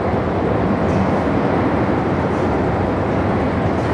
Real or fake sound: real